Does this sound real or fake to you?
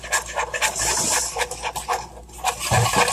real